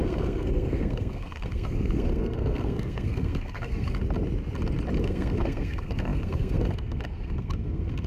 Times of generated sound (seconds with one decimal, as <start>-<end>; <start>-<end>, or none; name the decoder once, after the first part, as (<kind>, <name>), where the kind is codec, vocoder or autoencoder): 0.0-4.0 (codec, SNAC); 5.0-8.1